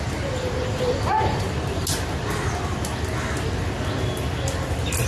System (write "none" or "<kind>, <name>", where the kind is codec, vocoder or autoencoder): none